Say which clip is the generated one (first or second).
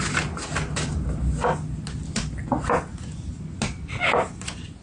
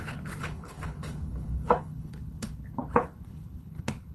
second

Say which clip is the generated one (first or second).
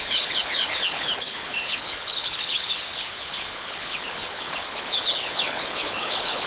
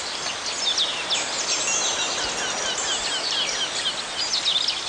first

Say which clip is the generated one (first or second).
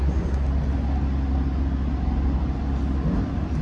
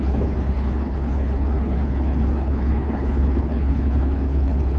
second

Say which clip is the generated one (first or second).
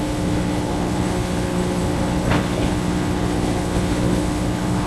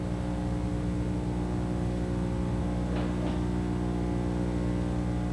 first